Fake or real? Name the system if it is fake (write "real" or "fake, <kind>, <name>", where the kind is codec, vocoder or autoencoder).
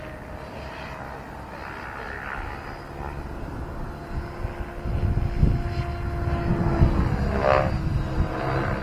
real